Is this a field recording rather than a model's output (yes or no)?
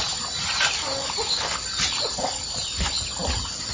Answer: yes